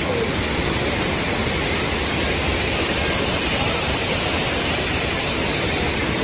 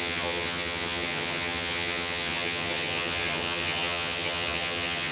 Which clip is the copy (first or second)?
second